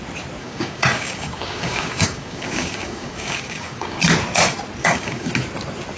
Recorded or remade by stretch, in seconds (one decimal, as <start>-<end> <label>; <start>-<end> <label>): 0.0-0.4 recorded; 0.4-4.0 remade; 4.0-4.8 recorded; 4.8-5.3 remade; 5.3-6.0 recorded